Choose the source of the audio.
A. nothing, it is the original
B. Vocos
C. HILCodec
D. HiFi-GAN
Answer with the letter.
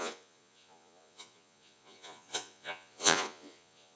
B